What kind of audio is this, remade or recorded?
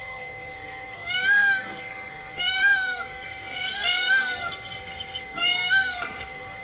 remade